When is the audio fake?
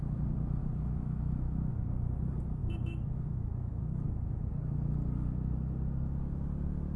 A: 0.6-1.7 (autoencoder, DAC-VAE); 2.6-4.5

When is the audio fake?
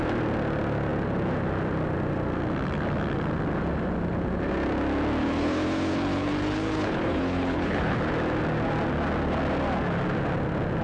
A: 5.2-8.0 (codec, HILCodec)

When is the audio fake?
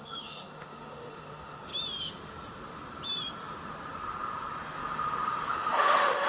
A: 0.0-1.7 (autoencoder, DAC-VAE); 5.5-6.3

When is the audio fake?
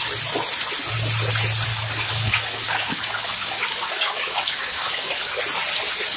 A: 1.7-5.4 (codec, DAC)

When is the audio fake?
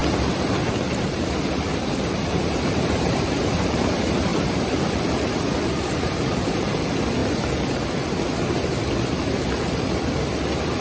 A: 0.0-3.9 (vocoder, BigVGAN v2); 4.3-6.8